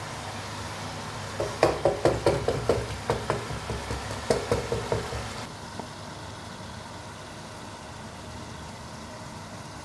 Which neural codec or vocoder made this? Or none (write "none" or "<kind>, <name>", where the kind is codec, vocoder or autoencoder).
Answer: none